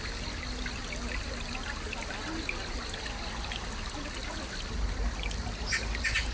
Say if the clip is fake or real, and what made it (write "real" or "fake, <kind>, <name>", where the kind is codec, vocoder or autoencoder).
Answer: real